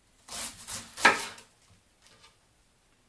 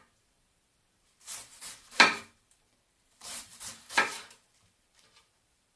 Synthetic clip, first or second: second